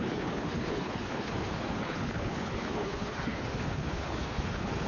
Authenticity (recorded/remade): remade